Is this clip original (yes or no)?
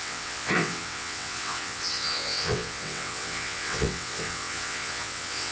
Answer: no